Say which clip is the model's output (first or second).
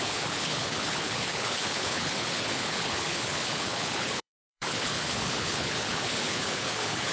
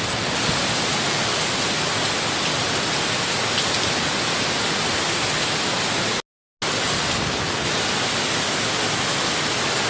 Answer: first